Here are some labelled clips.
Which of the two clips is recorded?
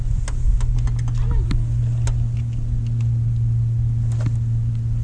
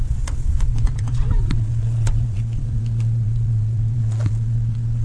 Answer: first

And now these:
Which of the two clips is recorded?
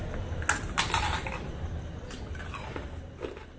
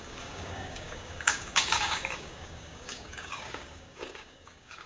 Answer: first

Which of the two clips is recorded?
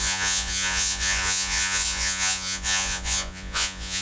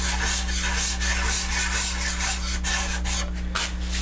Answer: second